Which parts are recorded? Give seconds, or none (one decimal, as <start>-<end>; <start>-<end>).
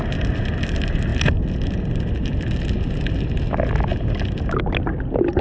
0.0-5.4